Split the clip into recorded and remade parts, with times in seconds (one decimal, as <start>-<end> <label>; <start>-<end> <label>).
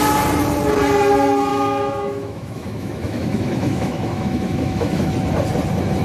0.0-1.5 recorded; 1.5-5.1 remade; 5.1-6.0 recorded